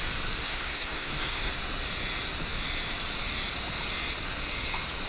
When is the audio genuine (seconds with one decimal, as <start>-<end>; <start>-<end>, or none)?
0.0-0.4; 1.5-5.1